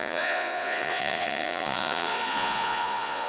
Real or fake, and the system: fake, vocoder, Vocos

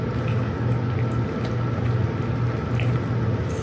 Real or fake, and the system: real